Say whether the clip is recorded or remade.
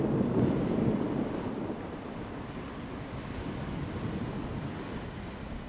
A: recorded